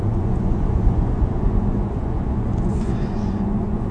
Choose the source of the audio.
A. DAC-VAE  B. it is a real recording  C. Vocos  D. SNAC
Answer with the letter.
C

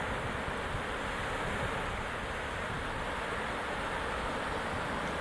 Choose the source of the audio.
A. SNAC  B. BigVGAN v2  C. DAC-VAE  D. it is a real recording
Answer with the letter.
D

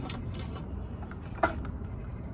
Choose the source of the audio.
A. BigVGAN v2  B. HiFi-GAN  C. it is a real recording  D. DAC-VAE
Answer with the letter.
A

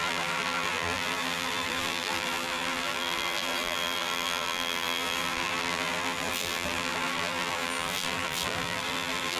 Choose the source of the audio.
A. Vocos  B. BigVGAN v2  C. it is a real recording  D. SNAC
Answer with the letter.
B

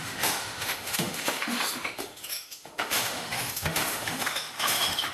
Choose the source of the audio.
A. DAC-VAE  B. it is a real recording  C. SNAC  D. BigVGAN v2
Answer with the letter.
A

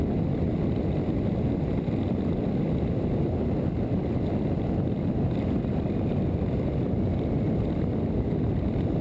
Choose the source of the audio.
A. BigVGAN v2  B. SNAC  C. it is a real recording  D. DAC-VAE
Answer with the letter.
C